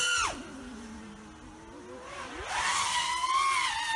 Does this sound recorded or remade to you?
recorded